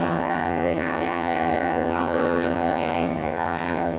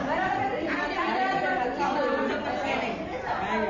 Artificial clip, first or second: first